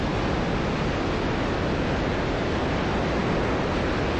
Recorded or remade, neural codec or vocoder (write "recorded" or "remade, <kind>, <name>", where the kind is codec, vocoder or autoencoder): recorded